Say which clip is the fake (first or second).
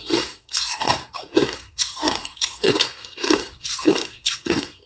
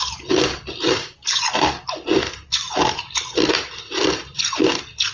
first